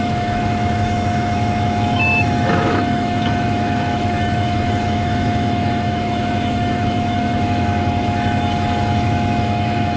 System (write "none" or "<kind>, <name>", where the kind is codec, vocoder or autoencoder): autoencoder, DAC-VAE